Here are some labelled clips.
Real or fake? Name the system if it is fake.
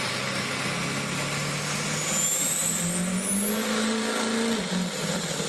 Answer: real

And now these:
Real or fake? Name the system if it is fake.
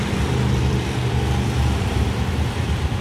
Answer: fake, vocoder, BigVGAN v2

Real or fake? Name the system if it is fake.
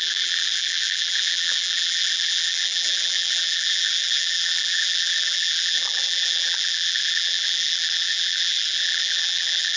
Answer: fake, vocoder, BigVGAN v2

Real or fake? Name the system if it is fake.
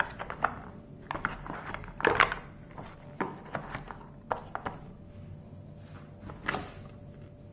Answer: real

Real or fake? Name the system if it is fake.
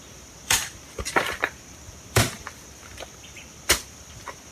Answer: fake, vocoder, BigVGAN v2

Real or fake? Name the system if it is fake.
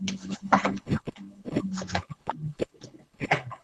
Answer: fake, codec, HILCodec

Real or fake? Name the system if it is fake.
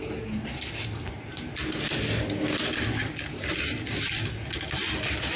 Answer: real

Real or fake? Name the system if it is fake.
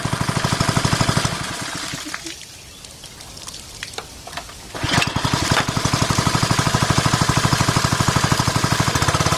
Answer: real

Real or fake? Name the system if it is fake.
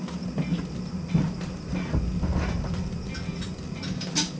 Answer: real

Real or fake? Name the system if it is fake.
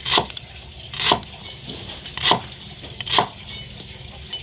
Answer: real